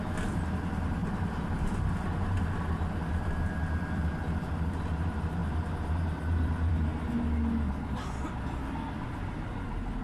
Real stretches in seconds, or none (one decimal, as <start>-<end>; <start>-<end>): 0.0-10.0